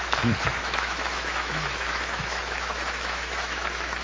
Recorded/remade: remade